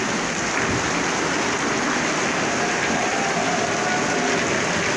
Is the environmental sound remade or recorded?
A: recorded